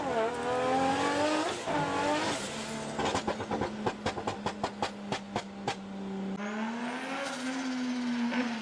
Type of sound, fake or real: real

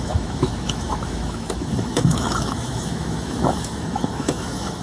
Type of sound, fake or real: fake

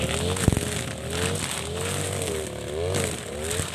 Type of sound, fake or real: real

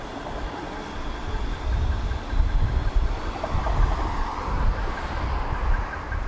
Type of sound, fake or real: real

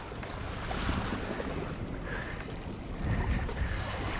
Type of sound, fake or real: real